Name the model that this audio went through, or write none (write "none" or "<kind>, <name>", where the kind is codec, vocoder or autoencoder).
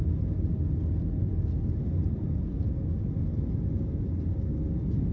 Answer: none